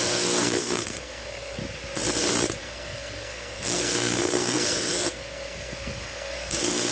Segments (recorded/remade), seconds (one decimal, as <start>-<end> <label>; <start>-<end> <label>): 0.0-1.6 remade; 1.6-2.6 recorded; 2.6-6.9 remade